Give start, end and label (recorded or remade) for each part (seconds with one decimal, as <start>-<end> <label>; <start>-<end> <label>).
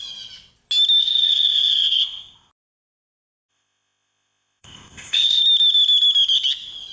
0.0-1.0 recorded; 1.0-2.5 remade; 2.5-3.5 recorded; 3.5-5.4 remade; 5.4-6.9 recorded